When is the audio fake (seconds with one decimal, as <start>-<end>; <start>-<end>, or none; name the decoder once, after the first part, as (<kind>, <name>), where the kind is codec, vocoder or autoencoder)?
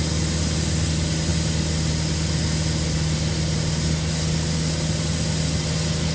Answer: none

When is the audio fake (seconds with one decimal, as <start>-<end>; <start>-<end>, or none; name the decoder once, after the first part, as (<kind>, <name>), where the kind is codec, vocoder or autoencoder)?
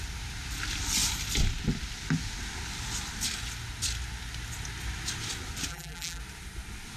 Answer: 5.7-6.2 (vocoder, BigVGAN v2)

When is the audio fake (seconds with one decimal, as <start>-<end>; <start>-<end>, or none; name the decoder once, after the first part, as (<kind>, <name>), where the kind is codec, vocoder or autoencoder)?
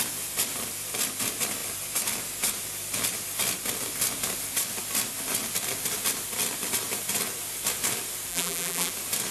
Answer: 8.3-8.9 (vocoder, BigVGAN v2)